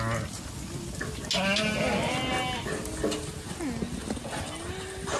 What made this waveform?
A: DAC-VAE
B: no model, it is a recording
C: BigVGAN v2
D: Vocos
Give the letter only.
B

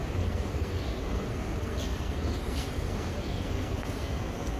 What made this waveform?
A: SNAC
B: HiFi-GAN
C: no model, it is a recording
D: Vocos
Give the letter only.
A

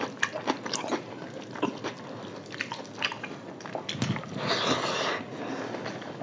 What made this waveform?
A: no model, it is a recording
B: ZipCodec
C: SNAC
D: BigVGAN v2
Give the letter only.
A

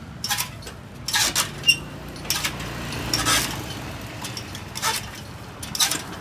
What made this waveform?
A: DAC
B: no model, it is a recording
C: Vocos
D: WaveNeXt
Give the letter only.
B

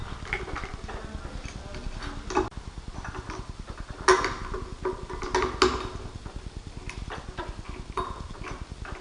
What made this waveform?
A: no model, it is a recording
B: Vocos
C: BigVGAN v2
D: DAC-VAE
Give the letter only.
A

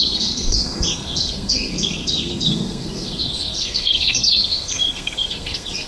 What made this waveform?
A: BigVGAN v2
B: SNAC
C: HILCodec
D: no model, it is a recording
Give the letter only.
B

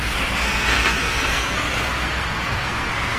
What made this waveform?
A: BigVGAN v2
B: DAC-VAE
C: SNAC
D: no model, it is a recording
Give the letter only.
C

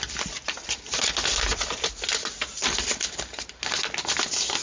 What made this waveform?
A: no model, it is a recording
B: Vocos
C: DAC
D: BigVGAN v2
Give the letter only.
A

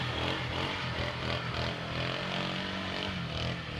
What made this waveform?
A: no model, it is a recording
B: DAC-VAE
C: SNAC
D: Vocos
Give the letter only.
A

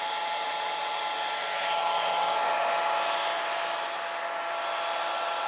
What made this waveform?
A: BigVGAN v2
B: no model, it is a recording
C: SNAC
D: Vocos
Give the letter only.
B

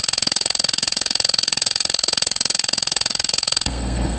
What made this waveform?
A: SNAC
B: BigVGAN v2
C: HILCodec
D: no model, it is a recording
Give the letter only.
A